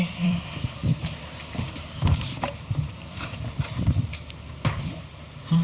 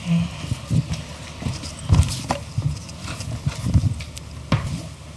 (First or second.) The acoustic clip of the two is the second